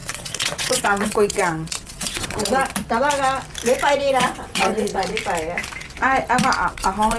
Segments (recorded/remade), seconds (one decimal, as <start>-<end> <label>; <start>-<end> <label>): 0.0-2.6 remade; 2.6-4.1 recorded; 4.1-4.9 remade; 4.9-6.7 recorded; 6.7-7.2 remade